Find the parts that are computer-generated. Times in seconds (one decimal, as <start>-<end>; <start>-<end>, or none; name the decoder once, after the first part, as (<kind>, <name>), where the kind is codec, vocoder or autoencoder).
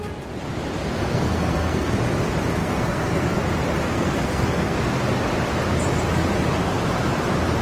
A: 1.1-1.9 (codec, SNAC); 2.6-3.4; 3.8-4.8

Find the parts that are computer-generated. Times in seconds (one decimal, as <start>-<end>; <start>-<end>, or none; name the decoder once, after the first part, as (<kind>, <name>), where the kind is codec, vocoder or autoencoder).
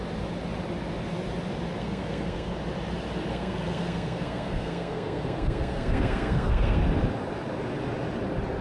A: 1.8-2.5 (codec, SNAC); 3.3-6.8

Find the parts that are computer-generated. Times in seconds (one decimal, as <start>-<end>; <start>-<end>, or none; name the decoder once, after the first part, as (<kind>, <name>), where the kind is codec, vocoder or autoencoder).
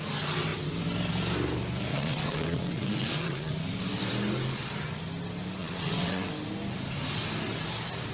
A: 1.9-3.5 (vocoder, WaveNeXt); 5.6-6.3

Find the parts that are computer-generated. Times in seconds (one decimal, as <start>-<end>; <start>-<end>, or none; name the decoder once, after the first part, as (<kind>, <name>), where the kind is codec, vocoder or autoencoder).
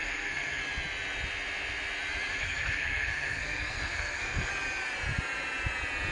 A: 0.0-0.6 (codec, SNAC); 2.4-4.5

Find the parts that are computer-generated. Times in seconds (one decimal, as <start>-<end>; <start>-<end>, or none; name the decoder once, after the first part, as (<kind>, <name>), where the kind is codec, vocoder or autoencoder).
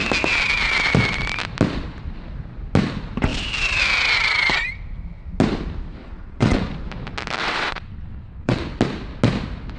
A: 6.0-6.6 (vocoder, WaveNeXt); 7.4-8.6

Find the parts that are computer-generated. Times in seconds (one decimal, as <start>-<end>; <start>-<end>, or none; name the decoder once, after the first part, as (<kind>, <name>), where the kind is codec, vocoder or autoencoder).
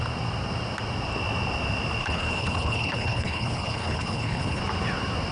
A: 2.0-4.6 (codec, HILCodec)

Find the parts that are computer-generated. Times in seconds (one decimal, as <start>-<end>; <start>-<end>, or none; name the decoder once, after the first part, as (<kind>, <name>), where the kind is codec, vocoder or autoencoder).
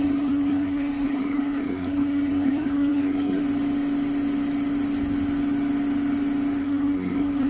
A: 0.0-3.4 (codec, SNAC); 6.6-7.5